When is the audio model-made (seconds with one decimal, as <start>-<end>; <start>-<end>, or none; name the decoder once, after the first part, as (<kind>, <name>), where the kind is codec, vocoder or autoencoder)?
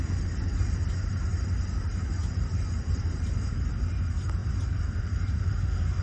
0.0-6.0 (vocoder, BigVGAN v2)